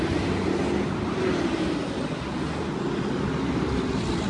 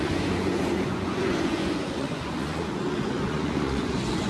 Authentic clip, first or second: first